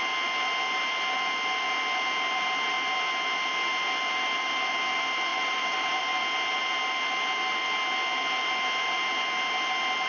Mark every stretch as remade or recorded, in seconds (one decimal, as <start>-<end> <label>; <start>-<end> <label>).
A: 0.0-5.3 recorded; 5.3-6.0 remade; 6.0-10.1 recorded